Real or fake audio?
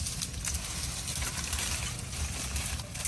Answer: real